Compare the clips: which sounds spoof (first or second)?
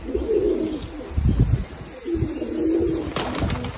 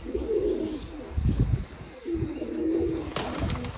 second